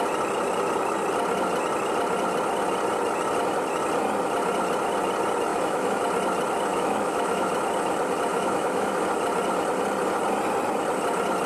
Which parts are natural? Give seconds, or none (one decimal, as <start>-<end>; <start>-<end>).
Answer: 0.0-5.5; 6.0-6.7; 7.5-8.3; 9.0-11.5